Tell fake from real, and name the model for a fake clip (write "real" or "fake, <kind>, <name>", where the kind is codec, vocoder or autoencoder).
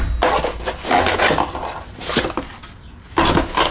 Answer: real